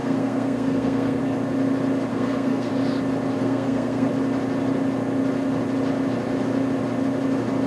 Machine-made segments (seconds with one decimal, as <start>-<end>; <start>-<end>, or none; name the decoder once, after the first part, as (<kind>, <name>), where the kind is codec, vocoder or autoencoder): 0.0-1.2 (codec, SNAC); 2.1-2.7; 3.4-4.1